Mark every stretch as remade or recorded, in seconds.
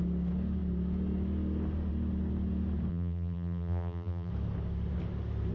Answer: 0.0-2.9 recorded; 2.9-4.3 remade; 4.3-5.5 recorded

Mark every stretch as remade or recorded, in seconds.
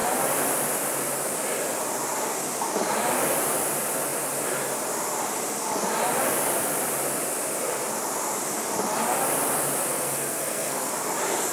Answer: 0.0-9.9 recorded; 9.9-10.9 remade; 10.9-11.5 recorded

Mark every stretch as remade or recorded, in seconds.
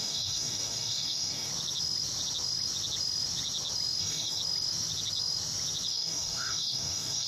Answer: 0.0-1.5 remade; 1.5-4.0 recorded; 4.0-4.4 remade; 4.4-5.9 recorded; 5.9-7.3 remade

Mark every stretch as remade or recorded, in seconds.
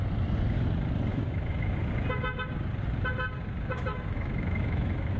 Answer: 0.0-1.1 recorded; 1.1-1.7 remade; 1.7-3.9 recorded; 3.9-5.2 remade